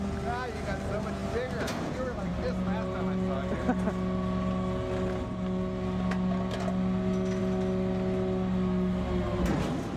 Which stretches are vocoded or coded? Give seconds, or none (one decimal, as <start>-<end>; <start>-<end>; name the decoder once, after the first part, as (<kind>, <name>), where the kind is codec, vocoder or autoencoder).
none